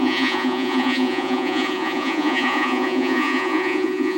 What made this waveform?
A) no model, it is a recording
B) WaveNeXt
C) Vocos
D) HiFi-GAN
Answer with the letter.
C